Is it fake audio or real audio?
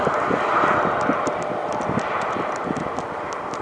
fake